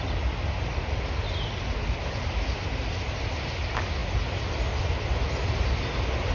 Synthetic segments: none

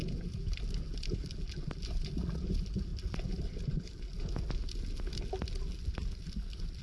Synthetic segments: 0.0-0.5 (vocoder, Vocos)

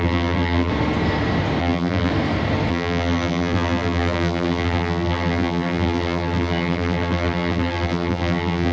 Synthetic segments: 0.0-0.7 (vocoder, BigVGAN v2); 1.6-2.1; 2.7-8.7

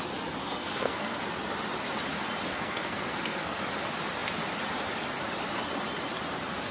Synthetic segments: 0.4-1.2 (codec, SNAC); 2.5-3.6

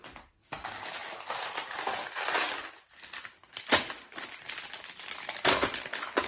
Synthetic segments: none